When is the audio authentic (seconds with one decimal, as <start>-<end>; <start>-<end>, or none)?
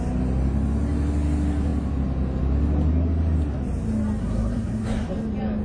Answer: 0.0-4.2; 5.1-5.6